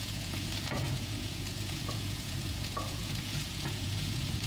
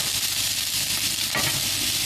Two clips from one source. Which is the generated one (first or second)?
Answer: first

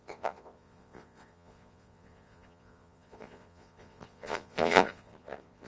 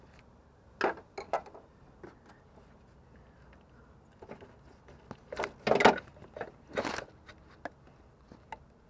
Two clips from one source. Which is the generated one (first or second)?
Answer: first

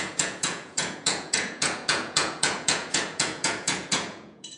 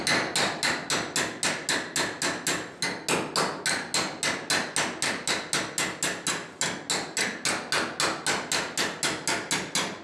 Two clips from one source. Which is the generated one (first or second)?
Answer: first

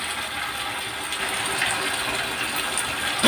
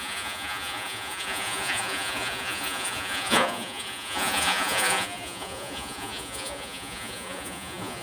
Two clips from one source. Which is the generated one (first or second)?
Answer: second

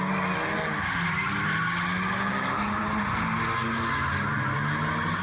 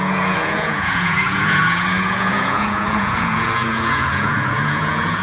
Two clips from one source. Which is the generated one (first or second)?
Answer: second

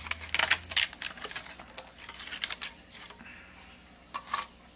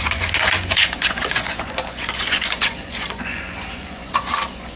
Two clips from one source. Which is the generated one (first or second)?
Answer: second